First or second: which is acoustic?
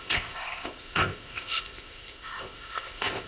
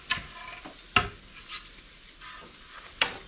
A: second